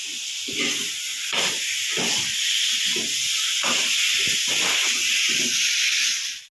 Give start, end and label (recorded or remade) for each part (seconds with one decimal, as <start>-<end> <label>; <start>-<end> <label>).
0.0-6.6 recorded